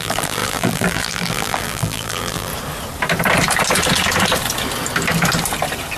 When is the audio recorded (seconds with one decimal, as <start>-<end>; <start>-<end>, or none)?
2.5-6.0